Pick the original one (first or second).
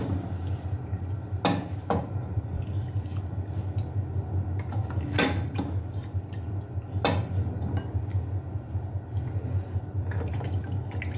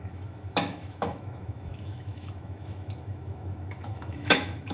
first